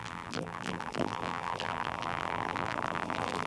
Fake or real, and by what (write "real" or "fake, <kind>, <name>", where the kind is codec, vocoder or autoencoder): fake, vocoder, BigVGAN v2